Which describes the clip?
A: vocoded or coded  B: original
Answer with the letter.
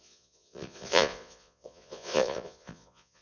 A